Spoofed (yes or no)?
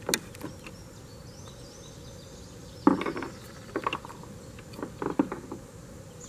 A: no